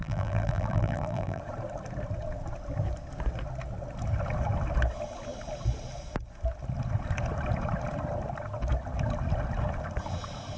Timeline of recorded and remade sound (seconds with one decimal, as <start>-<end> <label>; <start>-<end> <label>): 0.0-1.4 remade; 1.4-10.6 recorded